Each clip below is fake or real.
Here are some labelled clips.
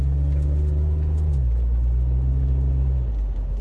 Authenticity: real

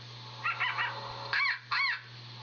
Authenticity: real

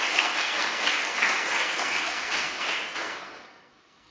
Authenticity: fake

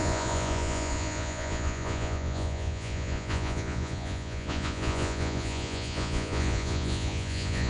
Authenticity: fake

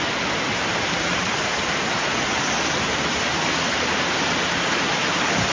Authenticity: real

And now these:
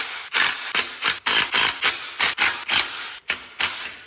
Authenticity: real